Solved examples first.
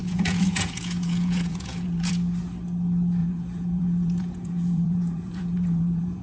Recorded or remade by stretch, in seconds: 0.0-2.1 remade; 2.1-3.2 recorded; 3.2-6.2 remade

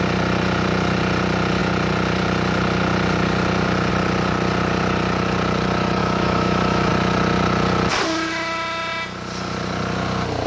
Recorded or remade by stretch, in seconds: 0.0-6.0 recorded; 6.0-6.9 remade; 6.9-10.5 recorded

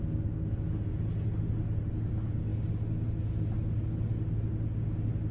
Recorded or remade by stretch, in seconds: 0.0-5.3 recorded

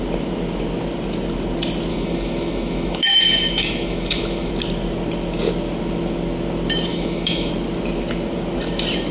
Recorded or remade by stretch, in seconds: 0.0-1.9 recorded; 1.9-4.5 remade; 4.5-6.9 recorded; 6.9-7.5 remade; 7.5-9.1 recorded

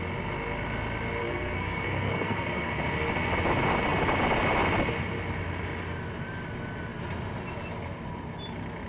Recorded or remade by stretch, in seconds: 0.0-1.2 recorded; 1.2-2.8 remade; 2.8-8.9 recorded

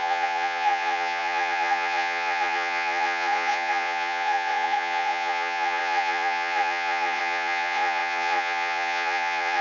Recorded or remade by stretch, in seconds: 0.0-9.6 remade

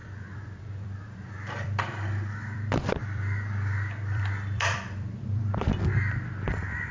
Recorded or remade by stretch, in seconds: 0.0-6.9 remade

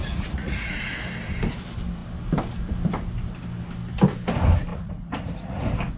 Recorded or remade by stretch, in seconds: 0.0-0.9 remade; 0.9-4.7 recorded; 4.7-5.6 remade; 5.6-6.0 recorded